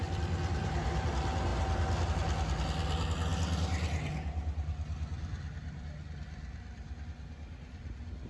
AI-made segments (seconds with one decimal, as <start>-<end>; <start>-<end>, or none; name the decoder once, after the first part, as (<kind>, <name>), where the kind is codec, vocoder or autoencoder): none